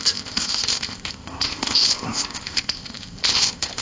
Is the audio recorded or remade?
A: remade